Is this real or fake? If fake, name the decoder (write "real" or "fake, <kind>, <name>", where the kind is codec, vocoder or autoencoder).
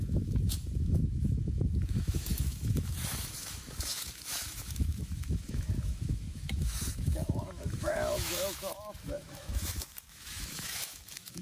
fake, autoencoder, DAC-VAE